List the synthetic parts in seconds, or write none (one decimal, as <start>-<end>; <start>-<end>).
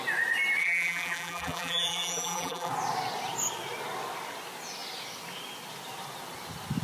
0.6-2.7